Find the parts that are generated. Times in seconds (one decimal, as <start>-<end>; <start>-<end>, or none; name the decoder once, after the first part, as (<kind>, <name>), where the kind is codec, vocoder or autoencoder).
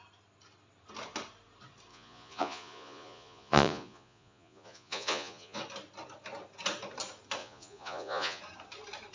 1.9-5.6 (vocoder, Vocos); 7.4-8.4